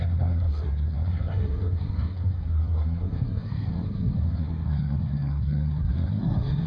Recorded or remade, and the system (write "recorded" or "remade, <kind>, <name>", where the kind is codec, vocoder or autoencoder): remade, codec, SNAC